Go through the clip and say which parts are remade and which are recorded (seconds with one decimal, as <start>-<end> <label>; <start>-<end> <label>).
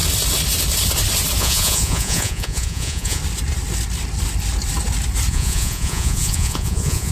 0.0-1.4 recorded; 1.4-3.2 remade; 3.2-5.3 recorded; 5.3-7.1 remade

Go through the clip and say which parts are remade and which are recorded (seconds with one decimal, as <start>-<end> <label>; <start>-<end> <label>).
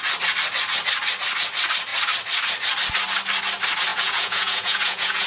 0.0-3.9 recorded; 3.9-5.3 remade